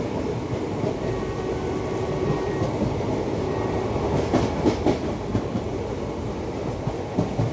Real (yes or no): yes